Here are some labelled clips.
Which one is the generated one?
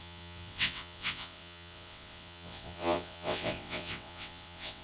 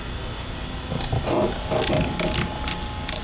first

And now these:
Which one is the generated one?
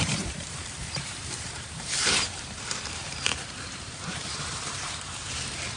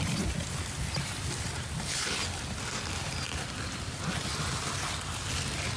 first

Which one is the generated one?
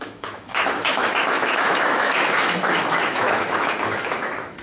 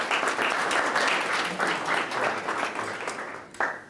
first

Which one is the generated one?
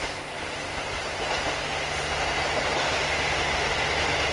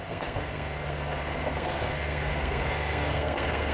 second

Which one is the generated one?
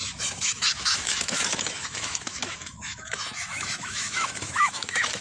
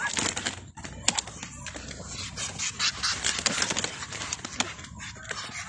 first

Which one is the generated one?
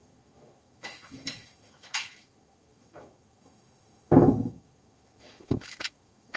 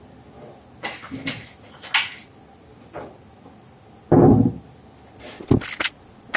first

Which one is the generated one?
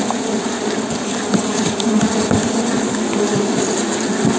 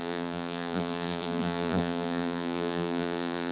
second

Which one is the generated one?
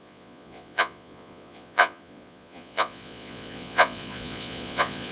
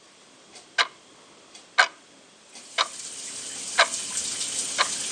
first